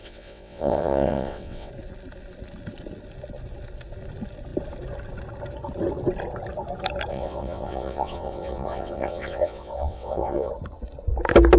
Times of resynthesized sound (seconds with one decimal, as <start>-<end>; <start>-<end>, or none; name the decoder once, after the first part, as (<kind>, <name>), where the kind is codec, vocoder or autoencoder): 0.0-1.7 (vocoder, WaveNeXt); 7.1-10.5